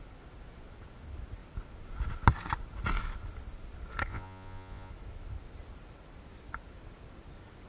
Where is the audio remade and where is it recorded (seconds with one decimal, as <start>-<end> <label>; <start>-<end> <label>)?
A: 0.0-4.1 recorded; 4.1-4.9 remade; 4.9-7.7 recorded